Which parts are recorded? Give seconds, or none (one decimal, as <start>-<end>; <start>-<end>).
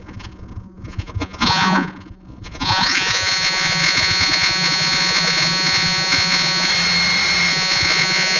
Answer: 6.7-7.5